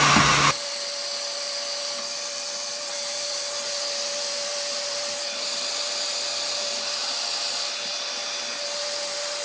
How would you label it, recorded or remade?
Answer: recorded